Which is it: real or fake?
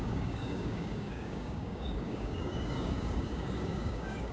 fake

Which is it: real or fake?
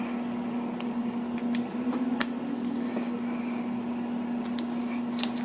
real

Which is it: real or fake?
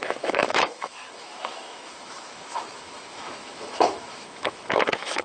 fake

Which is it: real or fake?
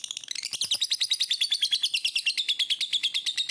real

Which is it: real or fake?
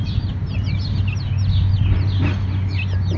real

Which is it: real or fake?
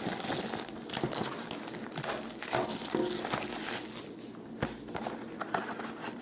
real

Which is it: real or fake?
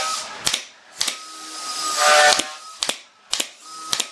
real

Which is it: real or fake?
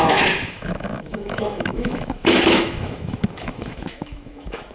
fake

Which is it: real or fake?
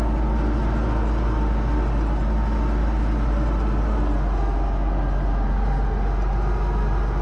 real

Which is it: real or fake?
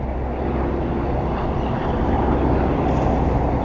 real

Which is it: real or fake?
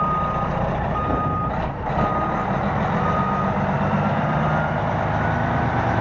real